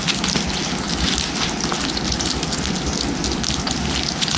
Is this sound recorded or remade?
recorded